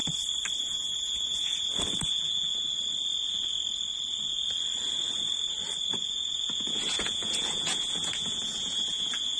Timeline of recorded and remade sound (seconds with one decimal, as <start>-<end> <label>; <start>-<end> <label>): 0.0-0.6 recorded; 0.6-2.5 remade; 2.5-6.0 recorded; 6.0-9.4 remade